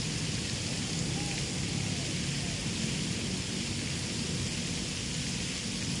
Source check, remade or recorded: recorded